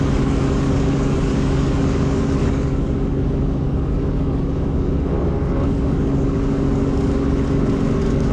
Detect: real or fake fake